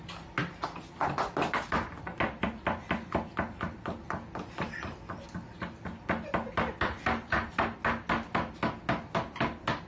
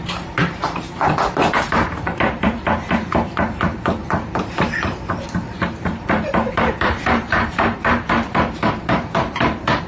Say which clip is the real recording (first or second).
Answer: first